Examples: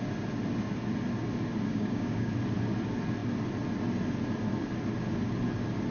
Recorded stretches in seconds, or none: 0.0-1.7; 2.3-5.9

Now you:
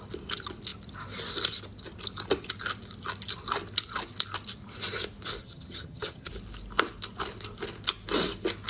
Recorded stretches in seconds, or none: 0.0-5.4; 6.3-8.7

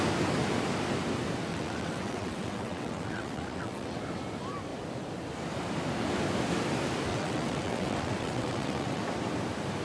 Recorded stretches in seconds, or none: 0.0-1.5; 4.0-7.1; 9.0-9.8

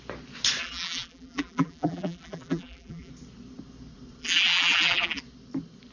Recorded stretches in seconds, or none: 0.0-0.6; 3.1-4.2; 5.2-5.9

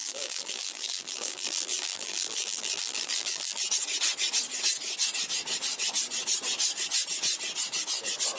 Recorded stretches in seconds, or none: 3.6-8.4

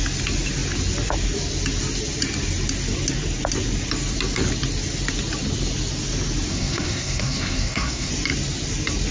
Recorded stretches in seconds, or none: 0.0-6.5; 8.1-9.1

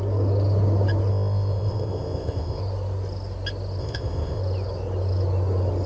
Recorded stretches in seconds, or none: 0.0-1.1; 2.6-3.8; 4.4-5.9

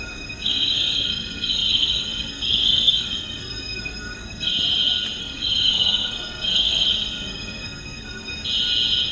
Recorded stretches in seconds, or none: 4.5-5.2; 8.3-9.1